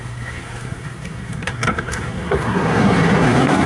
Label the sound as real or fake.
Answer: fake